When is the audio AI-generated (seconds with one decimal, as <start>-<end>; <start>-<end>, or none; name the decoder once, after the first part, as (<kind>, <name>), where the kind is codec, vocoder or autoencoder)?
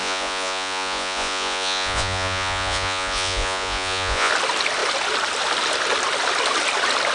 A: 0.0-4.3 (vocoder, Vocos)